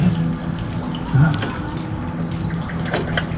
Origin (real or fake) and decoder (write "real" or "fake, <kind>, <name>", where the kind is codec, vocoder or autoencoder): real